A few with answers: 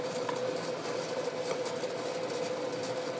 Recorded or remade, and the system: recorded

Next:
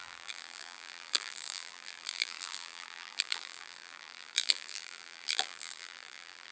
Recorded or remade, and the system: remade, vocoder, BigVGAN v2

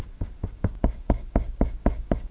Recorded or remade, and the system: remade, codec, DAC